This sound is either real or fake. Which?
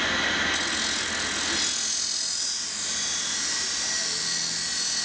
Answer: real